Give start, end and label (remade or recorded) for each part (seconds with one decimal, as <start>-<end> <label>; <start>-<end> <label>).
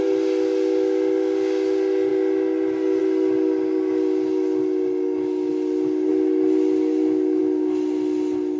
0.0-8.6 recorded